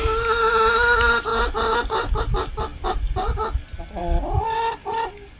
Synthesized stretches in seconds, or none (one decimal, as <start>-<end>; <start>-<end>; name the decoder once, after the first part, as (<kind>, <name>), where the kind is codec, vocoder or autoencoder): none